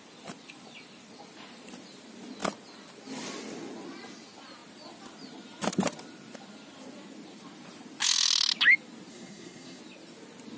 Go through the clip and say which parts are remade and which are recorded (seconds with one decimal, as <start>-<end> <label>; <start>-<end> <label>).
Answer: 0.0-9.1 recorded; 9.1-9.8 remade; 9.8-10.6 recorded